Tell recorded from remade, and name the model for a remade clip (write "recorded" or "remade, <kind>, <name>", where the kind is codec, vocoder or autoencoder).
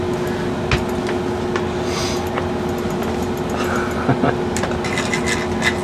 recorded